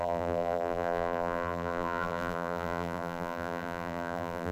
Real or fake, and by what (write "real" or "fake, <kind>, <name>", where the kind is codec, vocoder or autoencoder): fake, vocoder, BigVGAN v2